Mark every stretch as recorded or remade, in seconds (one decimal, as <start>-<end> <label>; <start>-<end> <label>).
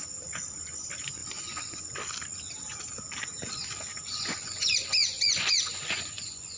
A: 0.0-1.2 recorded; 1.2-1.9 remade; 1.9-3.9 recorded; 3.9-6.6 remade